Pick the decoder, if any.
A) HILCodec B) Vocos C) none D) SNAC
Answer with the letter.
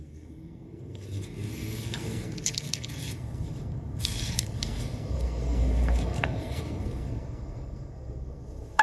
D